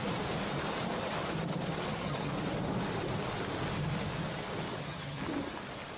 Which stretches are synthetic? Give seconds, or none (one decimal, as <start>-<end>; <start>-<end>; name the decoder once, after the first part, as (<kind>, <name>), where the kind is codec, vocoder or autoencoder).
1.9-2.3 (vocoder, HiFi-GAN); 4.8-5.2